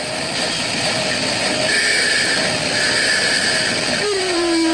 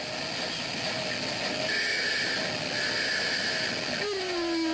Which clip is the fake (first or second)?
first